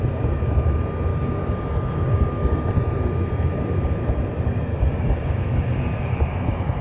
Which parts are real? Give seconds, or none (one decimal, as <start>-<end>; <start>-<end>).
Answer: 0.0-1.1; 2.6-4.7; 6.0-6.8